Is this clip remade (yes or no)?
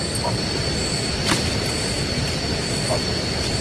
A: no